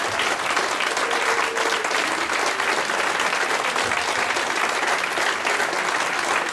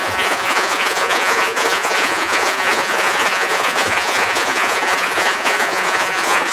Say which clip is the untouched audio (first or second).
first